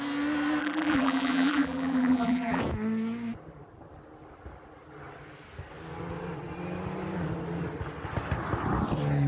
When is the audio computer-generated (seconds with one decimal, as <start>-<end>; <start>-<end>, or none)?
0.6-2.6